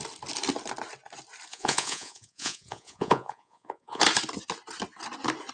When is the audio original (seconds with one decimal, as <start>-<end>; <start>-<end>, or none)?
0.0-1.5; 4.0-5.5